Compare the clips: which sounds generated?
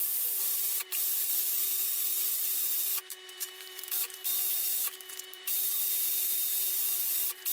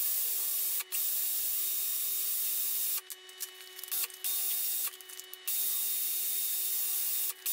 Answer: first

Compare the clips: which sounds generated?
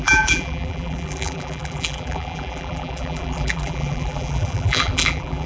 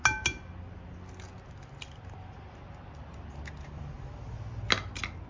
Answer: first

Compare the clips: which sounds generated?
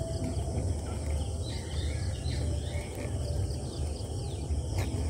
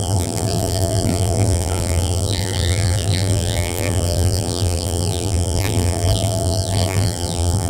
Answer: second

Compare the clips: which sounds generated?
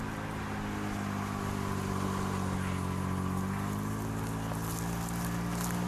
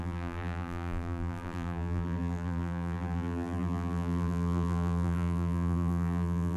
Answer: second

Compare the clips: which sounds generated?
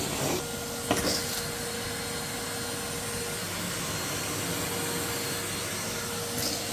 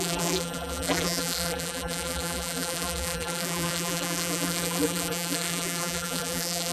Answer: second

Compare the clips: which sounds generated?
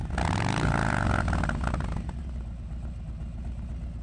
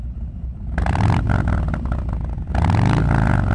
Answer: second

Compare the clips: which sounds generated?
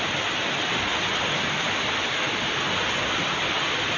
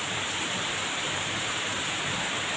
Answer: second